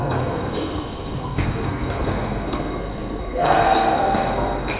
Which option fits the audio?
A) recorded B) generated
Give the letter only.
B